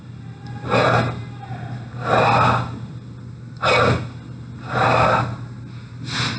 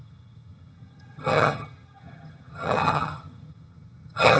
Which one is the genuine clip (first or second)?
first